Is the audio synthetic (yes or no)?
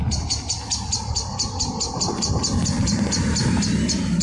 no